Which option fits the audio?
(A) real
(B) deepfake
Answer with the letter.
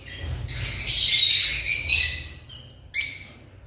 A